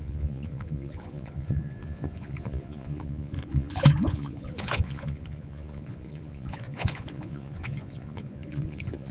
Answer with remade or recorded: remade